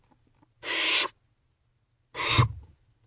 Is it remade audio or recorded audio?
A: recorded